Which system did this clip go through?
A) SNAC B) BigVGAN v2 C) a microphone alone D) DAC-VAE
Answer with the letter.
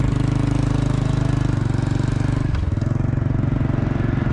C